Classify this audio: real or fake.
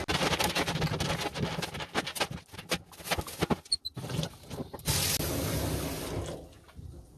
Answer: real